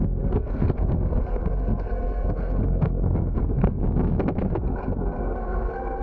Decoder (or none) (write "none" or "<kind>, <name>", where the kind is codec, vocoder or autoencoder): codec, SNAC